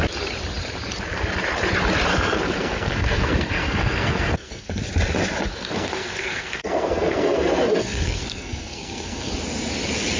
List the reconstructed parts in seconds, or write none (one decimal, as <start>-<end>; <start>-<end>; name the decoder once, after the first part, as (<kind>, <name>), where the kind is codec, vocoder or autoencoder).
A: 2.1-4.8 (codec, SNAC); 5.5-9.3

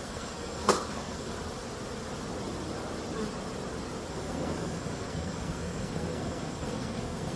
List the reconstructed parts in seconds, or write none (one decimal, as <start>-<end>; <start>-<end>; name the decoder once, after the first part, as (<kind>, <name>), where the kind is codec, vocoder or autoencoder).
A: 0.0-1.3 (codec, SNAC); 4.1-7.4

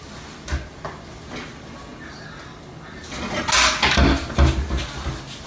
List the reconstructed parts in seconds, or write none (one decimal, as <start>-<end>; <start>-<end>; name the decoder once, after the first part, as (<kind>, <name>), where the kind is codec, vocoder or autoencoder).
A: none

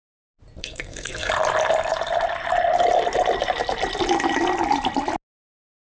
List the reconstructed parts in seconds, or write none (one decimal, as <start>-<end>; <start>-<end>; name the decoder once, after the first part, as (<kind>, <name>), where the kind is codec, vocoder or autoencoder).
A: 0.6-1.3 (codec, SNAC)

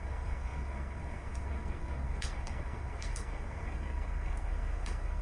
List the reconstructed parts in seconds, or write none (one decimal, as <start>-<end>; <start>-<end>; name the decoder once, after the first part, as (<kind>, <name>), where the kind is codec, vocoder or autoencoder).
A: 0.0-5.2 (codec, SNAC)

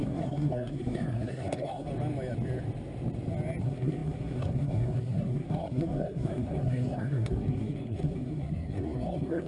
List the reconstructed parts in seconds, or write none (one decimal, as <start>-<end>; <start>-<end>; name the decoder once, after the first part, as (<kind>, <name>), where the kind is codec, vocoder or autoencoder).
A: 0.0-1.9 (codec, SNAC); 3.6-9.5